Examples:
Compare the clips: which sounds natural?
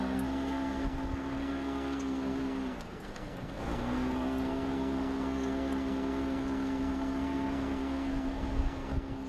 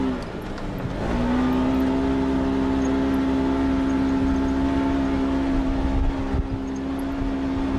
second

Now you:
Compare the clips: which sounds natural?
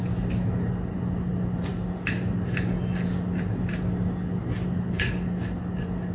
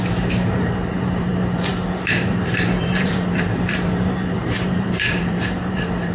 first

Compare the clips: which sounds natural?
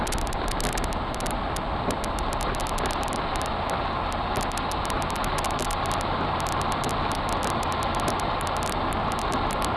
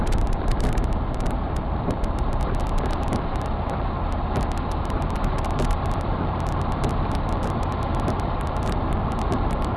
first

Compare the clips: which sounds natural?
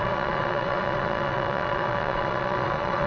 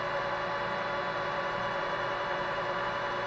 second